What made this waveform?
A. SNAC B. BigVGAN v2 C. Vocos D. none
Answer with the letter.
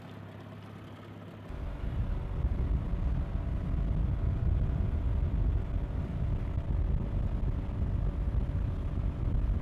D